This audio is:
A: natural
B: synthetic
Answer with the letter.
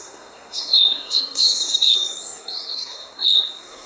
B